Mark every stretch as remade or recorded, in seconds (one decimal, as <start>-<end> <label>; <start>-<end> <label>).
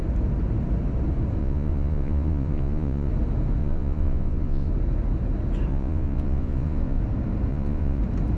0.0-1.4 recorded; 1.4-3.1 remade; 3.1-3.6 recorded; 3.6-4.7 remade; 4.7-5.7 recorded; 5.7-7.0 remade; 7.0-7.5 recorded; 7.5-8.0 remade; 8.0-8.4 recorded